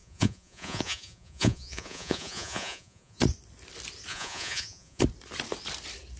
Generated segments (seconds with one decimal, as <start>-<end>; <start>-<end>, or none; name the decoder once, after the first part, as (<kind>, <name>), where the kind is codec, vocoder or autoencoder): 0.0-3.2 (vocoder, Vocos); 4.1-5.0